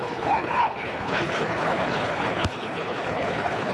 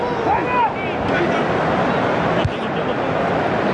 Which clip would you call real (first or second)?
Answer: second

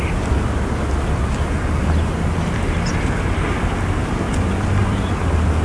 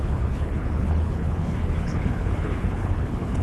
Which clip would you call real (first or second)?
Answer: first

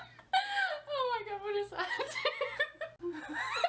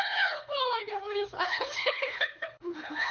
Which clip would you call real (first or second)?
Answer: first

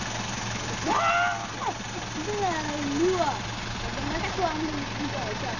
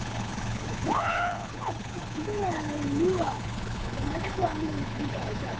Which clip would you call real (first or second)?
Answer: first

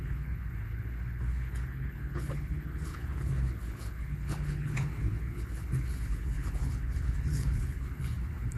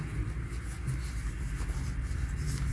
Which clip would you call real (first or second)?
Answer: second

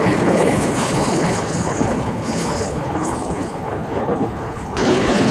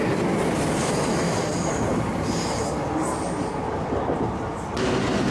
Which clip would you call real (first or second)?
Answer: second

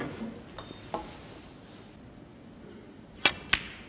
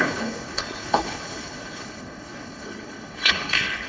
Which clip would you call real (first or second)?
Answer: first